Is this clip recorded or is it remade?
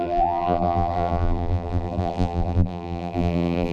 remade